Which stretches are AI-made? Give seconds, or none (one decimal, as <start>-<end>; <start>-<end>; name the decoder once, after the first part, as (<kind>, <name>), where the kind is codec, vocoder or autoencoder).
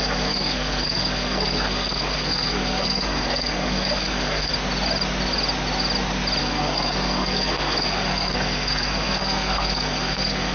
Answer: 0.0-4.5 (codec, SNAC); 6.4-10.5